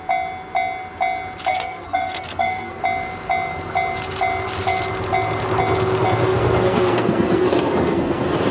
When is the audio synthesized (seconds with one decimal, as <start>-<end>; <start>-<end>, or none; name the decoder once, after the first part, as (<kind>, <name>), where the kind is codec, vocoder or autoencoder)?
1.5-2.8 (codec, SNAC); 6.3-8.5